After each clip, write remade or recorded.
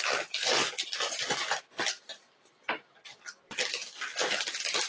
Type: recorded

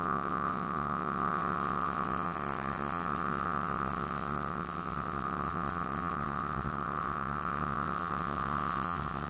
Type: remade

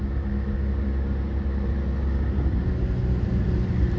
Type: recorded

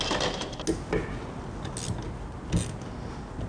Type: recorded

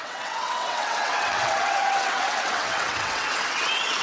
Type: remade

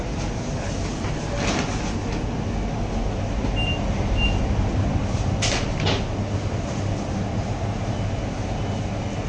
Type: recorded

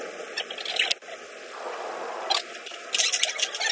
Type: recorded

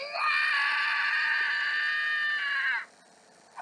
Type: recorded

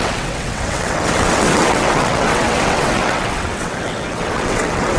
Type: remade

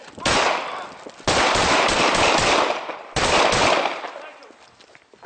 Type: recorded